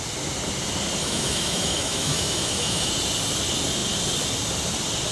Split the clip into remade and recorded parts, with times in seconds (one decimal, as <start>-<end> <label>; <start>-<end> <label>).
0.0-1.0 recorded; 1.0-2.9 remade; 2.9-5.1 recorded

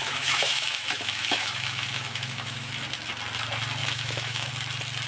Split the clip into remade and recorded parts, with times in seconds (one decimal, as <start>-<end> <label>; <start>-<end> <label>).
0.0-2.7 remade; 2.7-3.8 recorded; 3.8-4.5 remade; 4.5-5.1 recorded

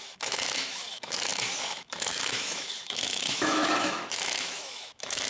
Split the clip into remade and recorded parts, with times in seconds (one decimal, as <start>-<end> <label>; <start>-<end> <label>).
0.0-5.3 remade

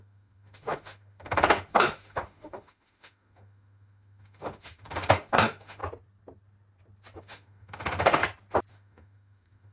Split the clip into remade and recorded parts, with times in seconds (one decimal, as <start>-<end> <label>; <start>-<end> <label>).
0.0-5.8 remade; 5.8-7.2 recorded; 7.2-8.2 remade; 8.2-8.7 recorded; 8.7-9.7 remade